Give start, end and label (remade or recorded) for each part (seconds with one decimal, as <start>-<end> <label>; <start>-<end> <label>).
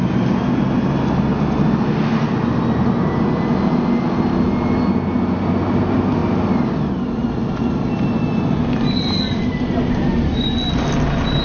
0.0-11.4 recorded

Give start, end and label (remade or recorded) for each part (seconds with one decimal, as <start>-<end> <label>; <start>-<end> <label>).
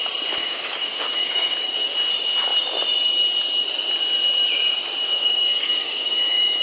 0.0-0.4 recorded; 0.4-1.9 remade; 1.9-5.0 recorded; 5.0-6.6 remade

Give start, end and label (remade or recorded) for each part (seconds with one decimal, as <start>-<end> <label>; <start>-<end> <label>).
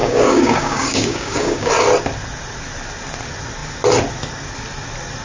0.0-1.7 remade; 1.7-5.2 recorded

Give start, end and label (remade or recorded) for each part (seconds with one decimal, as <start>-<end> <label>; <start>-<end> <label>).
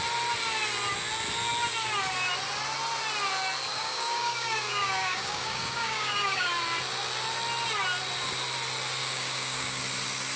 0.0-3.7 recorded; 3.7-6.5 remade; 6.5-9.0 recorded; 9.0-9.8 remade; 9.8-10.4 recorded